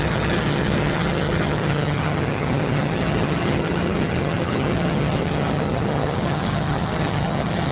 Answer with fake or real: fake